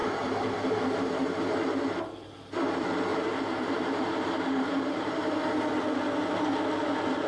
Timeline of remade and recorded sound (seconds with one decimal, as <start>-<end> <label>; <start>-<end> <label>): 0.0-1.4 remade; 1.4-3.1 recorded; 3.1-5.3 remade; 5.3-7.3 recorded